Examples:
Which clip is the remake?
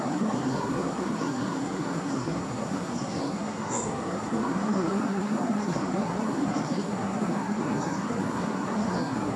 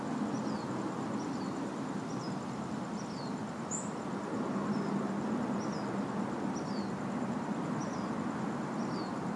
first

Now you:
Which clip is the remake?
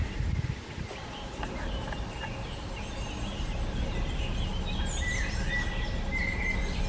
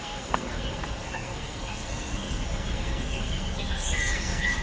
second